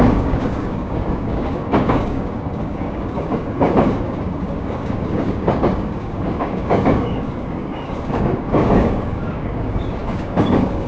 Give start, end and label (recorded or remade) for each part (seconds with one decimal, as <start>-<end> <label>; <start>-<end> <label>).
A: 0.0-10.9 remade

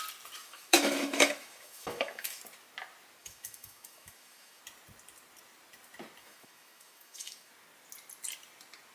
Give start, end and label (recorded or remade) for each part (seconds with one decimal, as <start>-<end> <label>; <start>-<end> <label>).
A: 0.0-0.4 recorded; 0.4-2.4 remade; 2.4-3.2 recorded; 3.2-4.6 remade; 4.6-6.2 recorded; 6.2-7.5 remade; 7.5-8.9 recorded

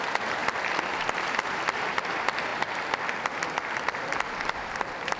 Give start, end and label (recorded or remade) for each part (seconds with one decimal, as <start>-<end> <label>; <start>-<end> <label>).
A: 0.0-5.2 recorded

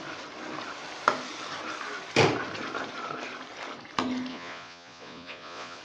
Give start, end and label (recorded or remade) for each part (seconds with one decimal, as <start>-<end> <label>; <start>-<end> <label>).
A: 0.0-4.3 recorded; 4.3-5.8 remade

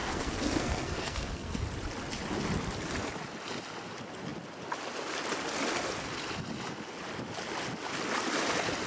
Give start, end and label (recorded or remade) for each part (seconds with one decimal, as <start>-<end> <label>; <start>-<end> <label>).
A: 0.0-1.6 remade; 1.6-8.9 recorded

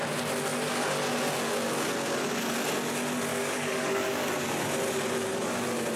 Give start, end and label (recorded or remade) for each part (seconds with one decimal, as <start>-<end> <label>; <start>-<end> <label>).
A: 0.0-3.3 recorded; 3.3-4.3 remade; 4.3-6.0 recorded

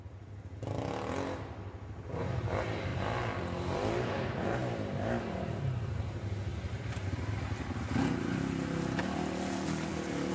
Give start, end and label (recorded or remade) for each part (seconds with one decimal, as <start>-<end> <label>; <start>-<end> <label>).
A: 0.0-10.3 recorded

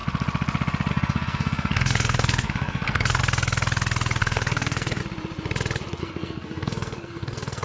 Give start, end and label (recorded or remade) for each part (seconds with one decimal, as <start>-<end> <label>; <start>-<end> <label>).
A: 0.0-0.9 recorded; 0.9-3.2 remade; 3.2-4.2 recorded; 4.2-5.0 remade; 5.0-6.0 recorded; 6.0-7.6 remade